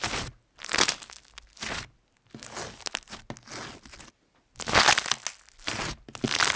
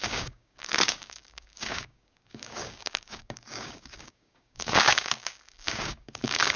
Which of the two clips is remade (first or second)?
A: second